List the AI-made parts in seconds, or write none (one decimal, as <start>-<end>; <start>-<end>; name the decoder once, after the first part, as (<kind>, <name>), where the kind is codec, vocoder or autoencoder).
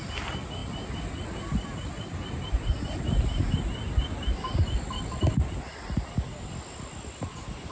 none